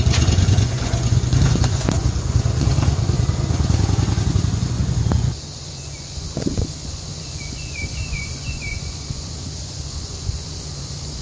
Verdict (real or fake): fake